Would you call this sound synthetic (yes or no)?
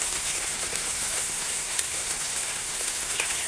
yes